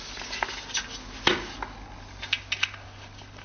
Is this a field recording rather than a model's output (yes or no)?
yes